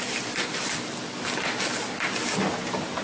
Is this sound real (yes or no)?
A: yes